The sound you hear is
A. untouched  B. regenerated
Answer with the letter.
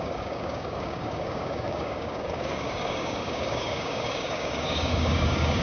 B